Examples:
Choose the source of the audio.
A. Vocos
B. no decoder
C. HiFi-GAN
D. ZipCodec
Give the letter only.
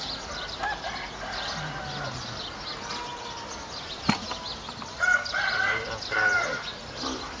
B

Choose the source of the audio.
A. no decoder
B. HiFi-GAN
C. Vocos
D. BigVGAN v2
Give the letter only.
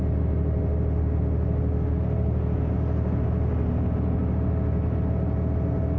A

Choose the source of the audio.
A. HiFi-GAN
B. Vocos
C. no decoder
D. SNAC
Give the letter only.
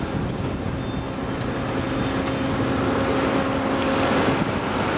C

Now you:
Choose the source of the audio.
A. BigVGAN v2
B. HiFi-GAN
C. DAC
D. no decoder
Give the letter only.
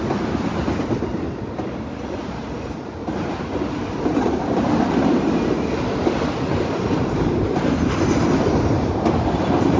D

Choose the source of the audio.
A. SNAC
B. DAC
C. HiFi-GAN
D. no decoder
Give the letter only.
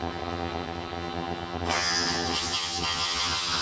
C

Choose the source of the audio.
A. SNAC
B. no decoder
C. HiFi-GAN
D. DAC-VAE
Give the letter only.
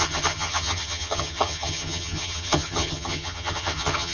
C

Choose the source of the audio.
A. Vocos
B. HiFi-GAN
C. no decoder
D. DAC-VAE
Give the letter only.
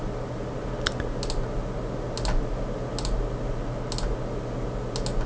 C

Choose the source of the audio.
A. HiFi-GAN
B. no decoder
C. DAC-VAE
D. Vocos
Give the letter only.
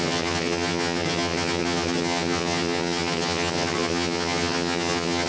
A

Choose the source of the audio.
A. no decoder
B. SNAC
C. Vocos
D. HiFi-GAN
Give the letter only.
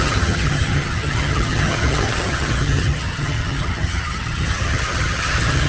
D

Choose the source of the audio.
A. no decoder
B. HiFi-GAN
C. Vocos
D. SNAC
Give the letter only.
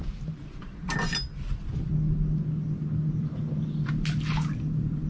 A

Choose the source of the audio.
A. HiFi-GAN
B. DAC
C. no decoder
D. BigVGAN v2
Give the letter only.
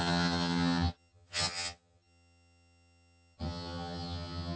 A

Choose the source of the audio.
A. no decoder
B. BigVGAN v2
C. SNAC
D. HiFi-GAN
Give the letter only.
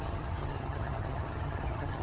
D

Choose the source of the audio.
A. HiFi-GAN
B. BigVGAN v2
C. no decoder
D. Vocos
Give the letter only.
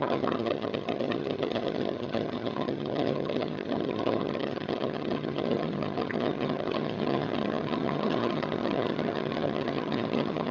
A